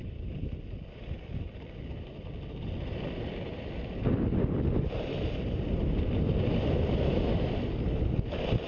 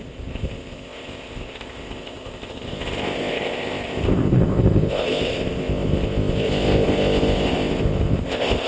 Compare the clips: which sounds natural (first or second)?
first